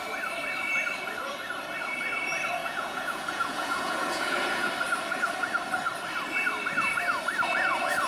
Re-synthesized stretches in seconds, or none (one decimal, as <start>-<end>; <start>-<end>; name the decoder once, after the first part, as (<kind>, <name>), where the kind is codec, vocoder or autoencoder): 2.6-4.7 (vocoder, Vocos)